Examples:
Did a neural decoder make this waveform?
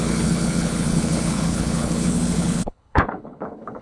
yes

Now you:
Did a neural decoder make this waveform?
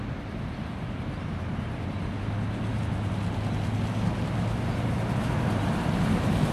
no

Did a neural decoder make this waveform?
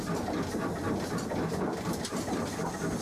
no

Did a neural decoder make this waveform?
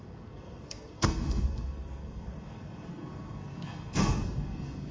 yes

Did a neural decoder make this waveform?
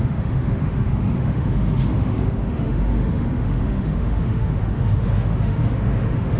yes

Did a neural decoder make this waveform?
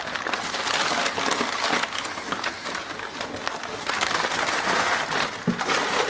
no